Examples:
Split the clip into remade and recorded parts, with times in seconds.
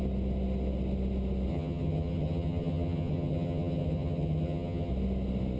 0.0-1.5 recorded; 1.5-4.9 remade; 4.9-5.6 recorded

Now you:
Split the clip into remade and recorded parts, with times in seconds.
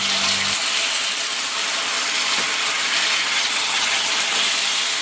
0.0-3.2 recorded; 3.2-4.1 remade; 4.1-5.0 recorded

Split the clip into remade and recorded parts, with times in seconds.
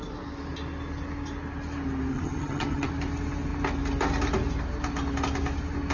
0.0-2.1 recorded; 2.1-2.9 remade; 2.9-5.9 recorded